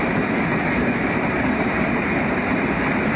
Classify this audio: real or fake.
fake